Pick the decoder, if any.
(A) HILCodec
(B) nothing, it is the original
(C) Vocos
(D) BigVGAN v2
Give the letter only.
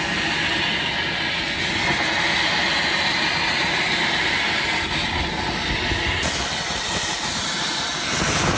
B